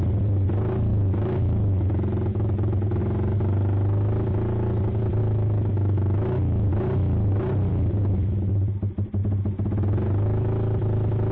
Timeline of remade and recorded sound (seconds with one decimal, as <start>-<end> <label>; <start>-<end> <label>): 0.0-0.9 recorded; 0.9-3.0 remade; 3.0-5.2 recorded; 5.2-6.7 remade; 6.7-7.7 recorded; 7.7-8.5 remade; 8.5-11.3 recorded